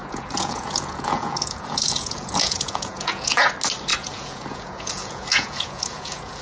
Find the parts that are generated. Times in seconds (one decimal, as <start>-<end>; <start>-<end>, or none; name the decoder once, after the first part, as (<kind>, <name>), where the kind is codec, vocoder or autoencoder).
0.0-3.5 (vocoder, Vocos); 3.9-6.4